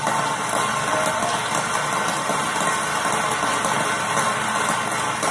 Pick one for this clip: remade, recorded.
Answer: recorded